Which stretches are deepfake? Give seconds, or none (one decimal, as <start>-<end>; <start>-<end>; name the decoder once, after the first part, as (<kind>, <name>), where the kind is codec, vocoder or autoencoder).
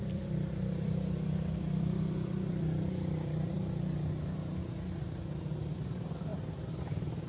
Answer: 0.0-7.3 (vocoder, BigVGAN v2)